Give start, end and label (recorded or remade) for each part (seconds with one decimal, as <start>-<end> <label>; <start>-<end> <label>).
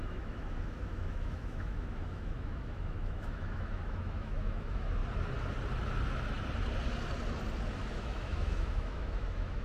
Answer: 0.0-5.0 remade; 5.0-7.9 recorded; 7.9-9.6 remade